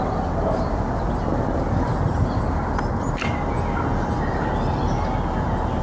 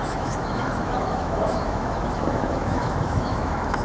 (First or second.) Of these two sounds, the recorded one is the first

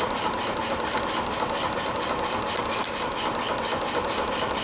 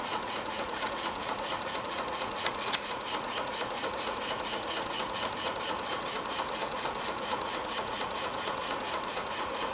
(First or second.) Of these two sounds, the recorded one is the first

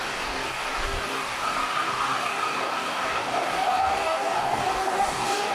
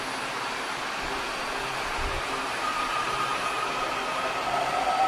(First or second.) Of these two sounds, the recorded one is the second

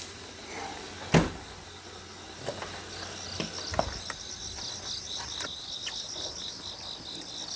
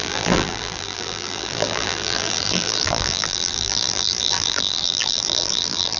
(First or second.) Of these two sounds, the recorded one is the first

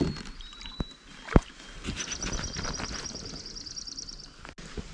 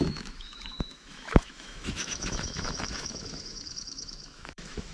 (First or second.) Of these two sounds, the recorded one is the first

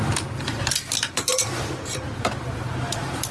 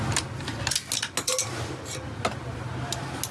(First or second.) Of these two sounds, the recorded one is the second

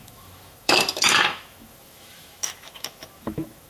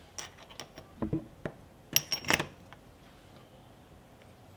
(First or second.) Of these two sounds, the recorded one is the second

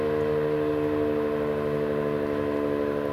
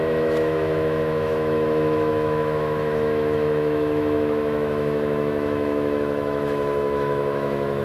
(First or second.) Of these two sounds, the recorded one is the first